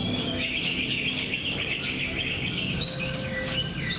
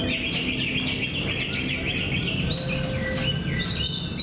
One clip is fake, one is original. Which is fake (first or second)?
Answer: first